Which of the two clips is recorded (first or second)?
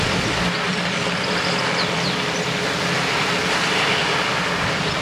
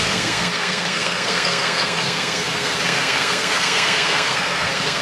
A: first